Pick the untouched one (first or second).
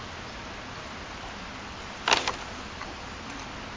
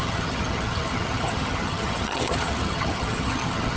first